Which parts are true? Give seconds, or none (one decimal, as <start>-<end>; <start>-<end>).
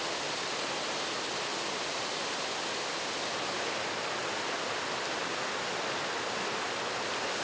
0.0-7.4